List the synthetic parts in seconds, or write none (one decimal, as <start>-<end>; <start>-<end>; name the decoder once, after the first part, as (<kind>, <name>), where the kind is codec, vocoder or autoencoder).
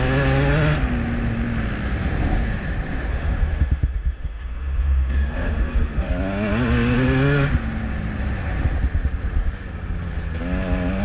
3.1-6.1 (autoencoder, DAC-VAE)